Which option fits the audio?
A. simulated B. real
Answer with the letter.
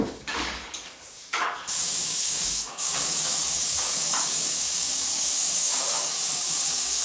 A